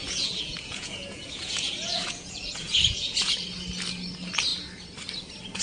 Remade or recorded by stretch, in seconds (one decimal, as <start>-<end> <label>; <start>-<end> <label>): 0.0-3.4 remade; 3.4-5.6 recorded